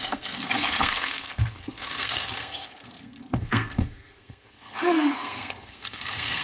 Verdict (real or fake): fake